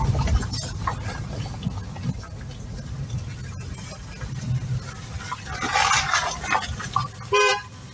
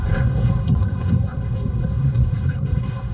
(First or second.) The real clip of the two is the first